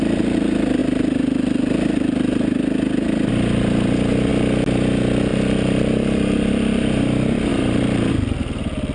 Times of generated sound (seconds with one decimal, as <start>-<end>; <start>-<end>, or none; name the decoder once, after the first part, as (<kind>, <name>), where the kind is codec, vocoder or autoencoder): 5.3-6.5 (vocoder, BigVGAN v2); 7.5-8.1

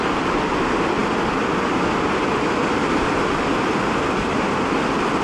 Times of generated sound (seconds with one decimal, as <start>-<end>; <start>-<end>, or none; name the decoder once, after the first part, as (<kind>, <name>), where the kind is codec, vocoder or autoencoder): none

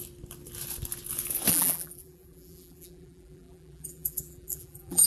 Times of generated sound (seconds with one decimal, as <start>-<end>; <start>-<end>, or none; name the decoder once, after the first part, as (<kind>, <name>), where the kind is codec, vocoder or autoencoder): 1.5-5.1 (vocoder, BigVGAN v2)

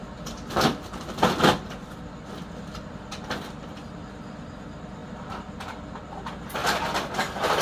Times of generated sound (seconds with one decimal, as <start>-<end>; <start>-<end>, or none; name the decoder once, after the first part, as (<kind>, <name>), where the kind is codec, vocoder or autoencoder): 0.0-6.6 (vocoder, BigVGAN v2)

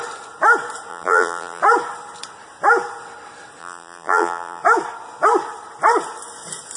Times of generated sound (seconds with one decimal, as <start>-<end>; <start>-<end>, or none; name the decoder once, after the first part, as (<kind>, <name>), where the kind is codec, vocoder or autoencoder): 0.9-1.6 (vocoder, BigVGAN v2); 3.6-4.6

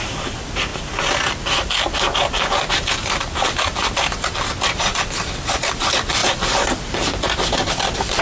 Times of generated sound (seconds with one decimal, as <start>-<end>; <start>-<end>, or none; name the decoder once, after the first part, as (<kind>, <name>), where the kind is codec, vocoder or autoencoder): 0.0-0.7 (vocoder, BigVGAN v2); 3.2-4.9; 5.5-8.2